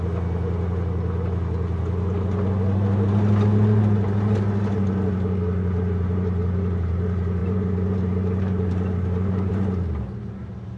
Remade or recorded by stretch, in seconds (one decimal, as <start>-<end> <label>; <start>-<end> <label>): 0.0-7.4 recorded; 7.4-9.5 remade; 9.5-10.8 recorded